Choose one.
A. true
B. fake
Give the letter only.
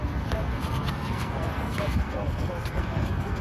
B